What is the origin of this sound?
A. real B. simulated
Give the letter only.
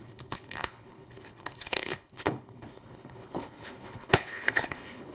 B